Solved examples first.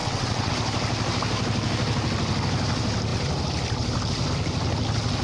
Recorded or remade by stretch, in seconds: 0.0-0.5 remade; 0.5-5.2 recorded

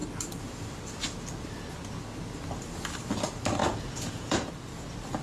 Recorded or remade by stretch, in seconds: 0.0-3.6 recorded; 3.6-4.5 remade; 4.5-5.2 recorded

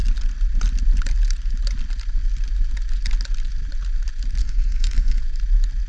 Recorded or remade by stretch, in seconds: 0.0-4.4 recorded; 4.4-5.2 remade; 5.2-5.9 recorded

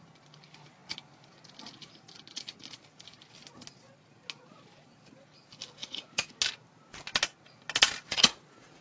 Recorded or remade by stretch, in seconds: 0.0-5.8 recorded; 5.8-6.3 remade; 6.3-8.1 recorded; 8.1-8.8 remade

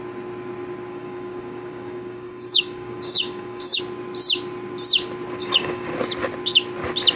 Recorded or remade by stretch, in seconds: 0.0-0.9 recorded; 0.9-3.8 remade; 3.8-5.4 recorded; 5.4-5.9 remade; 5.9-7.2 recorded

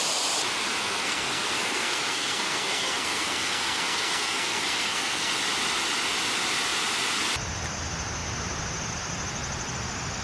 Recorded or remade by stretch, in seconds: 0.0-0.8 recorded; 0.8-5.3 remade; 5.3-10.2 recorded

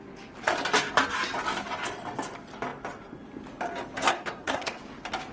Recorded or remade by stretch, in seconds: 0.0-4.1 recorded; 4.1-4.8 remade; 4.8-5.3 recorded